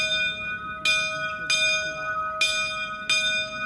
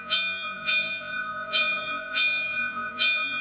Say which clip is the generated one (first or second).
second